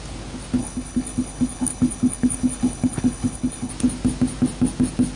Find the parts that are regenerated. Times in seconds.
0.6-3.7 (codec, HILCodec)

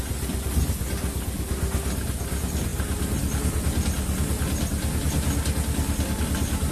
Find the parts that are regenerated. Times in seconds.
none

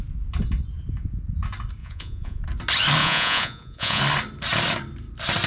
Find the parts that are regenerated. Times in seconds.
1.8-2.4 (vocoder, Vocos); 3.0-4.0

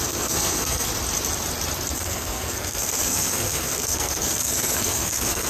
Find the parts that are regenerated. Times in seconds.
0.0-0.9 (codec, SNAC); 1.9-5.5

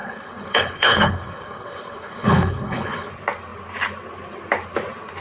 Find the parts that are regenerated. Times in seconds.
0.0-3.1 (codec, HILCodec)

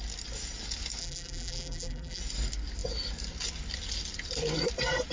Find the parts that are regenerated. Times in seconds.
1.0-2.2 (vocoder, BigVGAN v2)

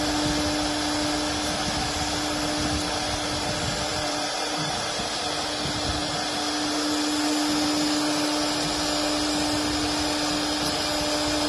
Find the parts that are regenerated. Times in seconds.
3.9-5.0 (vocoder, BigVGAN v2)